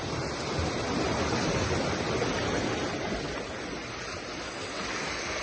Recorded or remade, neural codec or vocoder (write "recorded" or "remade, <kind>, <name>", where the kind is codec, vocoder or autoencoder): recorded